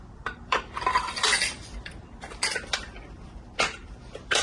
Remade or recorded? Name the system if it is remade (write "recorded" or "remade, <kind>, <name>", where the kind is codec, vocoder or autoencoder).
remade, vocoder, BigVGAN v2